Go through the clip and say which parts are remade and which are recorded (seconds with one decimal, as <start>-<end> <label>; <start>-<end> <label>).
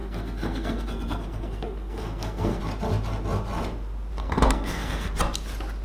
0.0-2.6 remade; 2.6-4.2 recorded; 4.2-5.1 remade; 5.1-5.8 recorded